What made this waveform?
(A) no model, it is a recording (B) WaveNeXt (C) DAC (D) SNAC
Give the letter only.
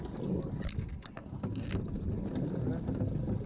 A